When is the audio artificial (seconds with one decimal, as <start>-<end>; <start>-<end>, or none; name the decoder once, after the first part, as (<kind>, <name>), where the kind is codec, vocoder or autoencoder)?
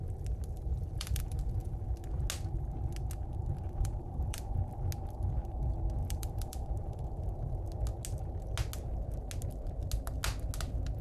0.7-1.4 (vocoder, BigVGAN v2); 3.4-4.5; 6.0-7.0